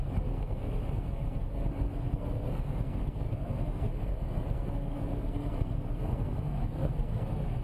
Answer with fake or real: fake